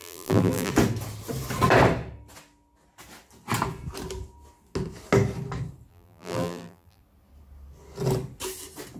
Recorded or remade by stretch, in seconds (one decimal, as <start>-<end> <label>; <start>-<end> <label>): 0.0-0.7 remade; 0.7-5.9 recorded; 5.9-7.0 remade; 7.0-9.0 recorded